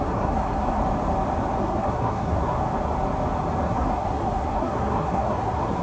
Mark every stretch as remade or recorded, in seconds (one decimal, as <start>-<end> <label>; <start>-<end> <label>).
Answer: 0.0-0.8 remade; 0.8-1.6 recorded; 1.6-2.6 remade; 2.6-3.6 recorded; 3.6-5.8 remade